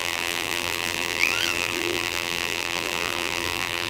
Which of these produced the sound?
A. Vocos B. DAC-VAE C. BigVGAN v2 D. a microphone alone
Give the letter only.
C